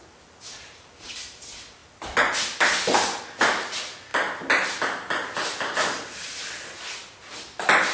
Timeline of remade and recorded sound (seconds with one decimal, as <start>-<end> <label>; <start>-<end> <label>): 0.0-7.9 recorded